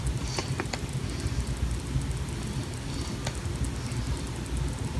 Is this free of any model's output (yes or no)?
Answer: yes